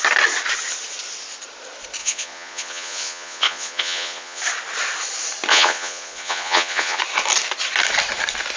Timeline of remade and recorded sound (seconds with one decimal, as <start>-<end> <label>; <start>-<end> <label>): 0.0-2.0 recorded; 2.0-4.4 remade; 4.4-5.5 recorded; 5.5-7.0 remade; 7.0-8.6 recorded